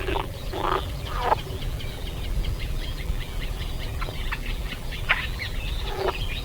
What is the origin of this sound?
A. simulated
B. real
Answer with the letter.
A